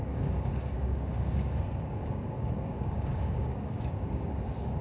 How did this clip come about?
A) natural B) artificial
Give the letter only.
B